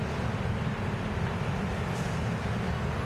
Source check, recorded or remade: recorded